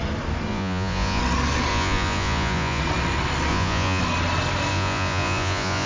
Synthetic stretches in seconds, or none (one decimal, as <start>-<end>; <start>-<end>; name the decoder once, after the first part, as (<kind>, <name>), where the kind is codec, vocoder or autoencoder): 0.5-1.2 (vocoder, Vocos); 1.7-2.8; 3.5-4.0; 4.7-5.9